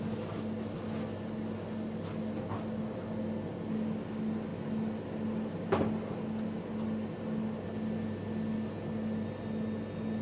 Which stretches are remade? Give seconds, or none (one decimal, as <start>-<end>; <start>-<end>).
none